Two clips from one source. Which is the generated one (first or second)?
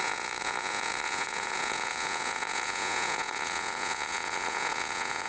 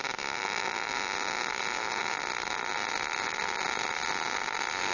first